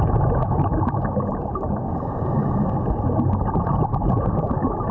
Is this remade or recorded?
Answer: recorded